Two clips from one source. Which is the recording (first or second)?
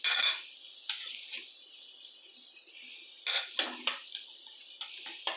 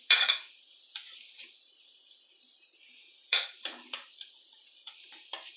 first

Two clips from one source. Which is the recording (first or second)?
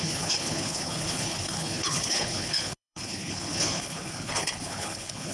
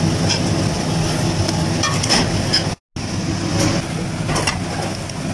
second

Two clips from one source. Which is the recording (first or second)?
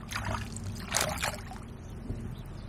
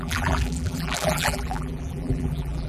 first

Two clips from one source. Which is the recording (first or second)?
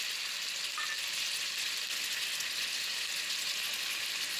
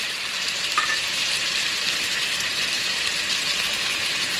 first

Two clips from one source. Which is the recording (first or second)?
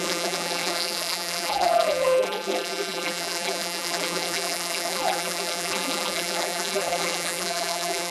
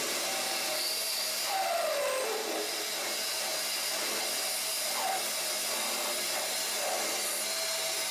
second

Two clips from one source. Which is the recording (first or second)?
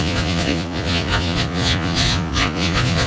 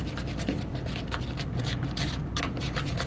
second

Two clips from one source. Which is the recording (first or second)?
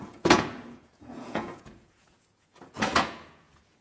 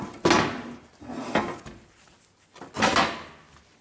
second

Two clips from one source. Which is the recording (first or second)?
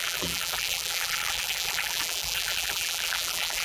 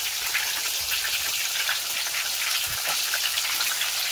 second